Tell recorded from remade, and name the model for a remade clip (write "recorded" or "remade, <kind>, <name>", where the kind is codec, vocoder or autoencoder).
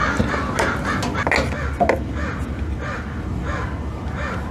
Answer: recorded